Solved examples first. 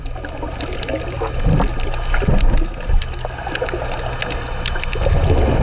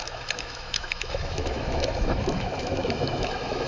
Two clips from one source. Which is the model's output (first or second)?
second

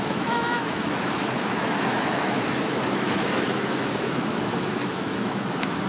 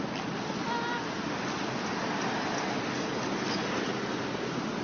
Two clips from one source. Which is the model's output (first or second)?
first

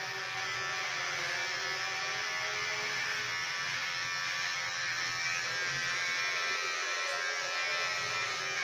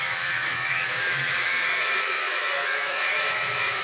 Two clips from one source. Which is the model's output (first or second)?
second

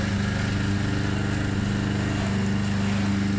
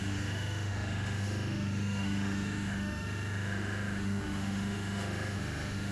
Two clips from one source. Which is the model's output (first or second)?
second